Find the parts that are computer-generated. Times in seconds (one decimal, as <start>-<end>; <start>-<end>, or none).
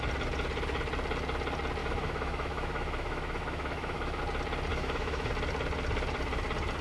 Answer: 1.8-4.2; 4.7-5.3